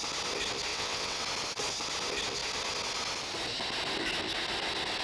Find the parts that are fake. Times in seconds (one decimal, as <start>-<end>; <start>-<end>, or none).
0.7-1.2